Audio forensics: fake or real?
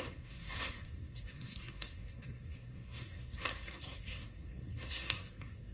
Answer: fake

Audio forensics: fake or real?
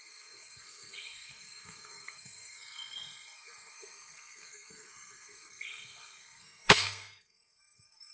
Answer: fake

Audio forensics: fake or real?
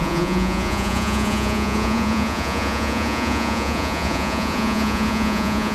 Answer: fake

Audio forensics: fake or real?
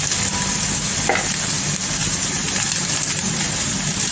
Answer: real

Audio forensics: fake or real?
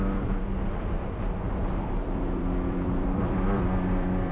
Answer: fake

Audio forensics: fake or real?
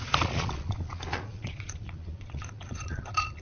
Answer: fake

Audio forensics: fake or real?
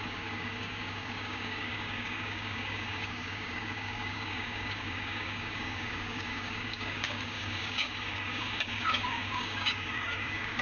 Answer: fake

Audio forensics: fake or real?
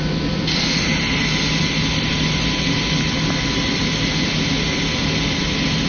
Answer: real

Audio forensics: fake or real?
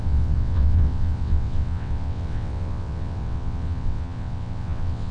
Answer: fake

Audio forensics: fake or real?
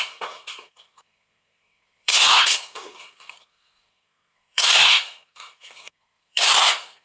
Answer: fake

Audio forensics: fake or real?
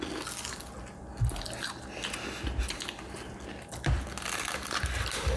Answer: real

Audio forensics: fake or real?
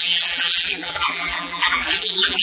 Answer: fake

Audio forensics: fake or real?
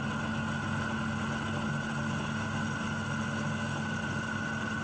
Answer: real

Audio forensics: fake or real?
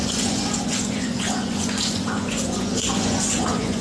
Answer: fake